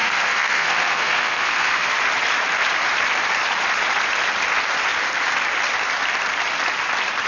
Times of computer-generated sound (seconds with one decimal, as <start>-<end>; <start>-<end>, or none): 0.0-2.0